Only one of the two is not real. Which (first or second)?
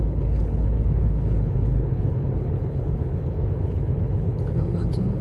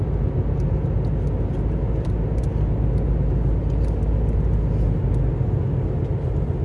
first